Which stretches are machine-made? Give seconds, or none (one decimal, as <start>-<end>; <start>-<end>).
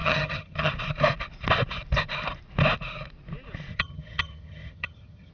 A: 0.0-0.7; 3.7-5.3